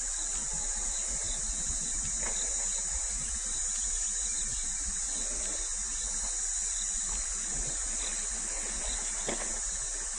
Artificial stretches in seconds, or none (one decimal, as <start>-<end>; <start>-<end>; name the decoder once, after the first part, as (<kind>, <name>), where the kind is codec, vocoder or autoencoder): none